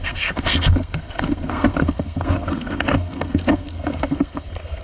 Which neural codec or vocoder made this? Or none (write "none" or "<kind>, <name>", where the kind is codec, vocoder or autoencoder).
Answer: codec, SNAC